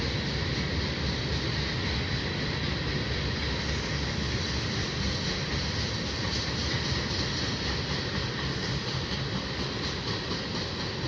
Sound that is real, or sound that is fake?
real